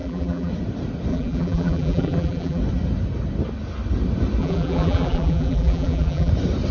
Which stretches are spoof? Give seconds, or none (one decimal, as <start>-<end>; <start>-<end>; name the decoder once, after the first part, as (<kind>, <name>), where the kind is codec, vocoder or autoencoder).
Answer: 0.0-0.5 (vocoder, BigVGAN v2); 1.1-2.6; 4.4-6.3